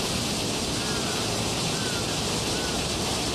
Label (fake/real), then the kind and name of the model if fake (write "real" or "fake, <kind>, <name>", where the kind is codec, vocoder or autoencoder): real